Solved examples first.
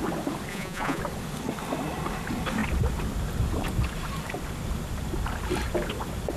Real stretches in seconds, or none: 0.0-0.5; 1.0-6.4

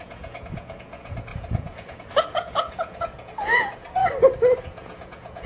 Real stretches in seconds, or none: 4.0-4.6

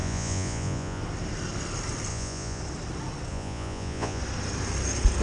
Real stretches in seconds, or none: 1.0-2.1; 2.6-3.3; 4.2-5.2

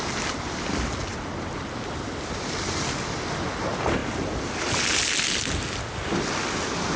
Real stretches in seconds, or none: 0.0-7.0

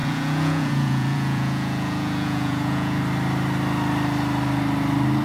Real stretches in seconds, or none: 3.0-5.2

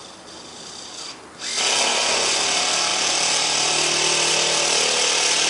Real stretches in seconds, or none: 0.0-1.9; 2.4-5.5